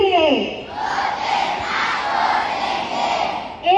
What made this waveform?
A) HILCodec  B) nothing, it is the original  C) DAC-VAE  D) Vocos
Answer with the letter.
B